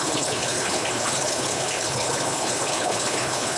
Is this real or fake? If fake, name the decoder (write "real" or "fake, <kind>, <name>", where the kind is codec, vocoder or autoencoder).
fake, codec, HILCodec